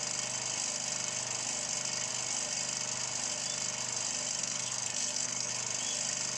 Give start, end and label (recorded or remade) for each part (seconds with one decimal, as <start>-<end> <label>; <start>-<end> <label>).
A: 0.0-4.4 recorded; 4.4-5.5 remade; 5.5-6.4 recorded